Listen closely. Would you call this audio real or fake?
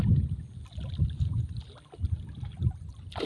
real